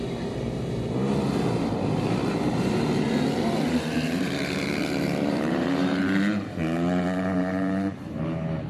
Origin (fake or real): fake